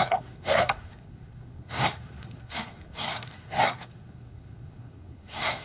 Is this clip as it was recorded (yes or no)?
no